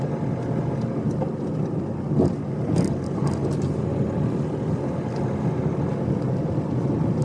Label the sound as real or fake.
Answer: real